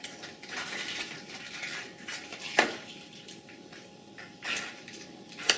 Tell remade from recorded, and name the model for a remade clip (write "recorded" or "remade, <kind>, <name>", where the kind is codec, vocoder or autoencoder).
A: remade, vocoder, BigVGAN v2